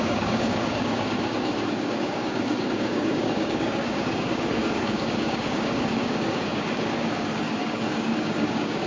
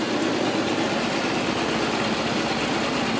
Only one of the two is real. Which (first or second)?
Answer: second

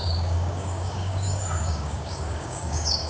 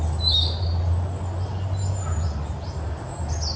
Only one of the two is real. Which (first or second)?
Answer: second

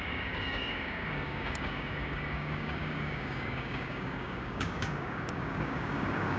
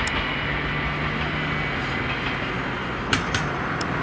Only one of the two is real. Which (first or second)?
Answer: second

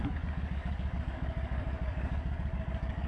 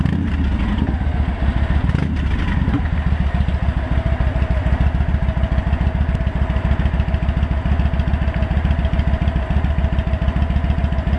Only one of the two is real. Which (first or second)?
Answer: second